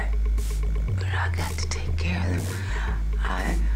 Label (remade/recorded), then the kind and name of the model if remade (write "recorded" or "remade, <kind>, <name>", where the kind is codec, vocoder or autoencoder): recorded